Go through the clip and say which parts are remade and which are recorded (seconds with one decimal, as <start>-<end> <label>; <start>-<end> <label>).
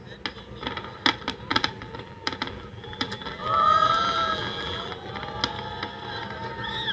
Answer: 0.0-1.5 recorded; 1.5-5.1 remade; 5.1-6.9 recorded